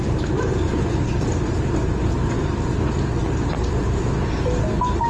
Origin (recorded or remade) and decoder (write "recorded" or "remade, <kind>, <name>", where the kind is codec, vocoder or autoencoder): recorded